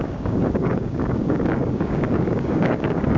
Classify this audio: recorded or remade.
remade